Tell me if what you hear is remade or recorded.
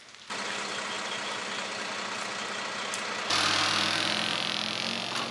recorded